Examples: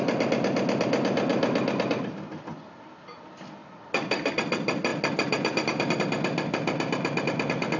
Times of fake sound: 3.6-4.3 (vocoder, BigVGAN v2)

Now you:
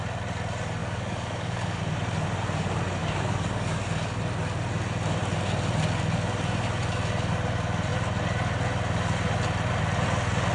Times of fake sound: 0.8-1.8 (codec, DAC); 3.0-4.2

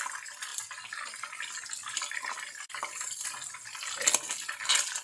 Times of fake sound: none

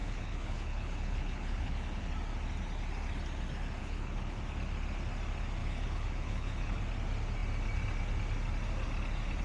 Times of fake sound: 0.0-2.1 (codec, HILCodec); 3.8-4.4; 5.6-6.8

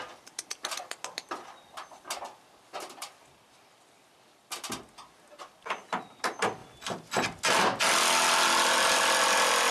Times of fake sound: none

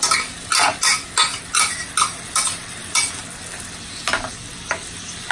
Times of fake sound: none